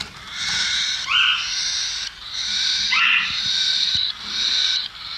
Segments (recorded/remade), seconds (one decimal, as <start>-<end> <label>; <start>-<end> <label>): 0.0-5.2 recorded